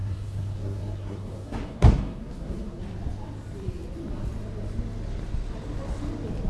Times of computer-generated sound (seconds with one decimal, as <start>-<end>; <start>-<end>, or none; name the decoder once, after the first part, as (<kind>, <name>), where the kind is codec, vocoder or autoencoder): 0.0-2.8 (codec, SNAC)